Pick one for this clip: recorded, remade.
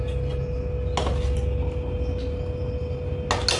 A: recorded